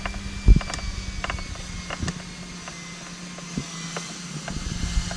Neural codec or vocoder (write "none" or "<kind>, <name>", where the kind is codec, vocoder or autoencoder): none